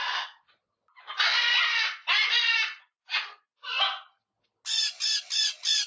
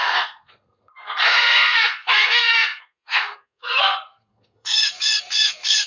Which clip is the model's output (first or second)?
second